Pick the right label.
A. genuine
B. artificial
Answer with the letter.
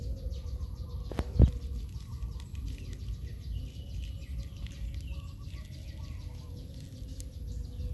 A